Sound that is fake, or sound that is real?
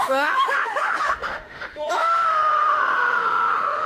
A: fake